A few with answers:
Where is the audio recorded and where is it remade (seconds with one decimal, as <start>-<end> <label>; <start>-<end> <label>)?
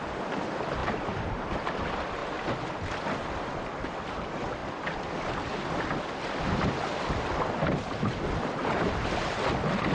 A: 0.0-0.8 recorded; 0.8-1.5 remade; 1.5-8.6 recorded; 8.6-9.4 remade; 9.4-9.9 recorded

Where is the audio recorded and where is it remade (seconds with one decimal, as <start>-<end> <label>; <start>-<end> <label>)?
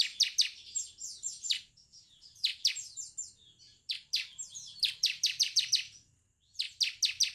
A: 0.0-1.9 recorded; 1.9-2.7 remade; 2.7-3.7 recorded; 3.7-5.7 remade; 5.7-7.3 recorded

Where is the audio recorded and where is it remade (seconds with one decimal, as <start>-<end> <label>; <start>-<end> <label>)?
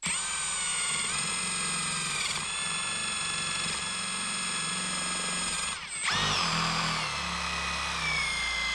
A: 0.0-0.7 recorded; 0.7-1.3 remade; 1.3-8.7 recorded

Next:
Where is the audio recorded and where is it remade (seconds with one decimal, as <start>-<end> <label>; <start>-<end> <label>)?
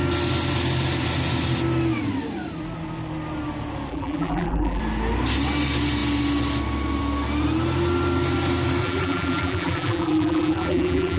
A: 0.0-3.9 recorded; 3.9-4.8 remade; 4.8-8.8 recorded; 8.8-11.2 remade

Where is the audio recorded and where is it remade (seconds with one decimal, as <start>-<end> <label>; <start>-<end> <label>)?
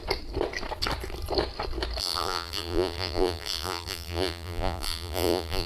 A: 0.0-2.0 recorded; 2.0-5.7 remade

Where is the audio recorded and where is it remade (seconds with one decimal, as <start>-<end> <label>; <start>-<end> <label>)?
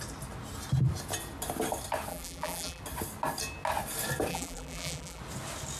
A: 0.0-2.1 recorded; 2.1-2.8 remade; 2.8-4.3 recorded; 4.3-5.2 remade; 5.2-5.8 recorded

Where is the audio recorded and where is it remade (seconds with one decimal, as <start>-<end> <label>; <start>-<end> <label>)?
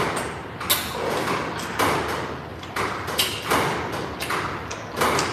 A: 0.0-2.5 recorded; 2.5-3.4 remade; 3.4-5.3 recorded